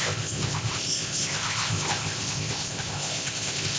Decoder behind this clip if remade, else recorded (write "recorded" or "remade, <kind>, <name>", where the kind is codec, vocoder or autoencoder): remade, codec, ZipCodec